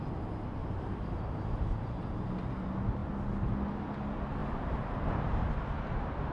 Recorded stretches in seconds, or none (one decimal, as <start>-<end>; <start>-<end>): 0.0-0.6; 2.3-4.4; 5.7-6.3